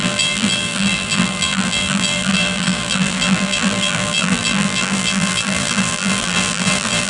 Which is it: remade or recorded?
remade